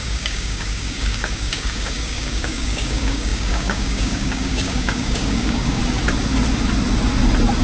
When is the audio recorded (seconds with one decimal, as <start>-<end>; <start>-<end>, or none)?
5.8-7.6